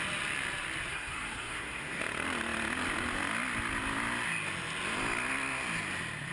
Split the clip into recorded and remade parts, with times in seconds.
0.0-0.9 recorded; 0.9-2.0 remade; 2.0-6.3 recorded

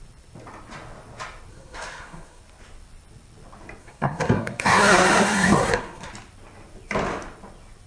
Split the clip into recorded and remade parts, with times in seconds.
0.0-1.5 recorded; 1.5-2.4 remade; 2.4-3.8 recorded; 3.8-6.1 remade; 6.1-7.9 recorded

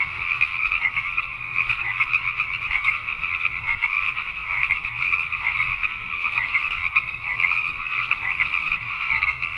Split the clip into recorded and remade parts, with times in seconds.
0.0-2.1 remade; 2.1-2.7 recorded; 2.7-9.6 remade

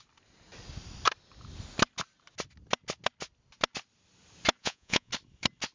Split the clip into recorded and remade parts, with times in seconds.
0.0-4.6 recorded; 4.6-5.1 remade; 5.1-5.7 recorded

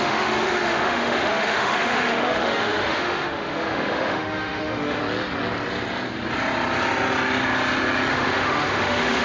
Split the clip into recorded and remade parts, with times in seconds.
0.0-5.0 remade; 5.0-8.1 recorded; 8.1-9.2 remade

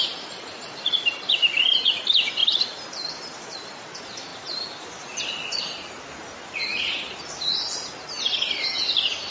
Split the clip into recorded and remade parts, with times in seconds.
0.0-9.3 recorded

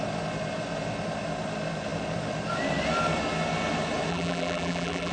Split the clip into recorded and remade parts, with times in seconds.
0.0-4.1 recorded; 4.1-5.1 remade

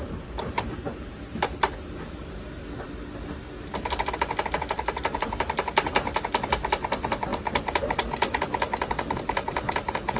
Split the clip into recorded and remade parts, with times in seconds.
0.0-2.6 remade; 2.6-4.1 recorded; 4.1-10.2 remade